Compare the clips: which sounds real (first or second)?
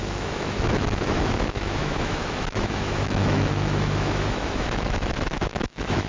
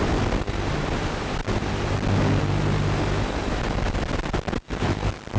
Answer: second